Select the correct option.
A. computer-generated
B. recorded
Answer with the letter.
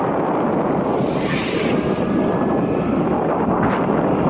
B